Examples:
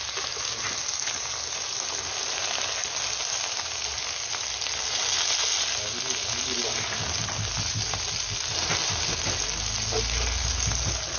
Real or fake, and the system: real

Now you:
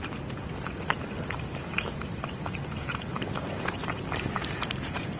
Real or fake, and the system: fake, vocoder, BigVGAN v2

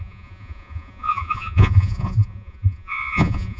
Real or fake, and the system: fake, vocoder, Vocos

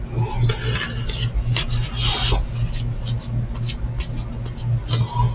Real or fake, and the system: real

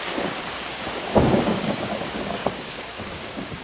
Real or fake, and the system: fake, codec, DAC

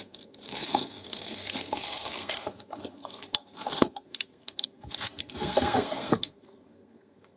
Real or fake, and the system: fake, codec, SNAC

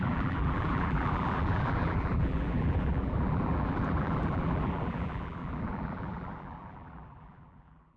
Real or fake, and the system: fake, vocoder, BigVGAN v2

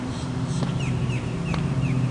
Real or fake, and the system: fake, vocoder, BigVGAN v2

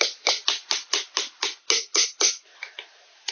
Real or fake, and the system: real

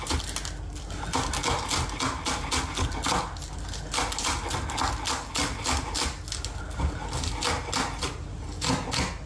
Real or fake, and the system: real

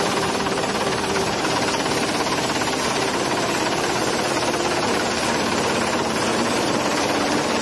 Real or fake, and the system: fake, vocoder, BigVGAN v2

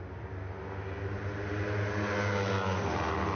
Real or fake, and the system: real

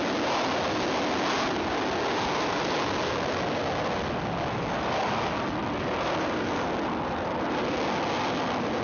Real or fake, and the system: real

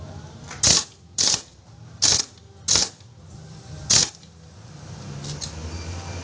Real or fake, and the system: real